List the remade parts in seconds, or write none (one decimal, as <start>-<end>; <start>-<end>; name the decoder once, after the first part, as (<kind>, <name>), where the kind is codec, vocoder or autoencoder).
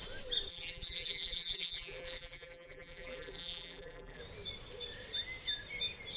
0.5-4.2 (vocoder, BigVGAN v2)